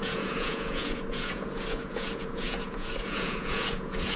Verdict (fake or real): fake